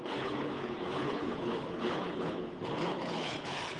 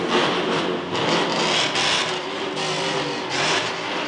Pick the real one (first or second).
second